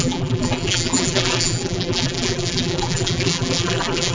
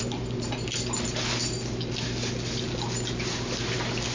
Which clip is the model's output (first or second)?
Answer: first